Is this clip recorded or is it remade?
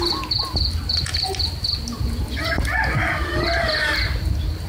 recorded